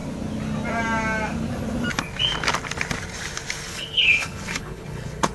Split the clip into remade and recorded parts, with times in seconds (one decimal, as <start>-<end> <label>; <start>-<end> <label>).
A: 0.0-3.7 recorded; 3.7-5.3 remade